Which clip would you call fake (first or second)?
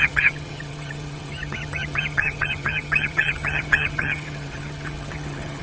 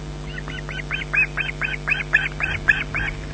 first